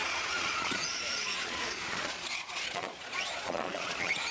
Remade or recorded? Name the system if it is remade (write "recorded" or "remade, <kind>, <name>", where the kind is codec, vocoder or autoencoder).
remade, vocoder, Vocos